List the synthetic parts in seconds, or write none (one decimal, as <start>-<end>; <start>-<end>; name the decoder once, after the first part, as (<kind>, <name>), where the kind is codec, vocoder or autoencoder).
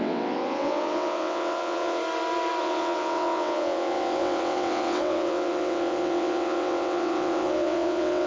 0.0-2.0 (vocoder, WaveNeXt); 2.6-8.3